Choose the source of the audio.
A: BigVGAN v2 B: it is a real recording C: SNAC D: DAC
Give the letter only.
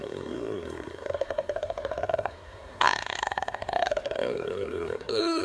C